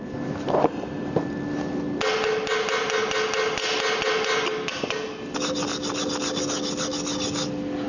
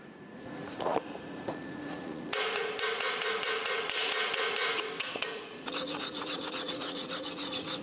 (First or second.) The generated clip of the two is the second